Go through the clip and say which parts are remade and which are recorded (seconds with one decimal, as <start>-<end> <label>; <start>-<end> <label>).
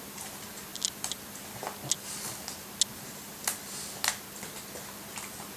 0.0-5.6 recorded